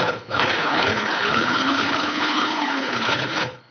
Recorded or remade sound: remade